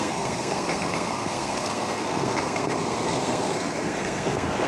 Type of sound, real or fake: fake